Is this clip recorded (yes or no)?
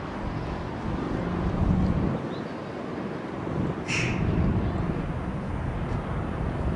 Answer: yes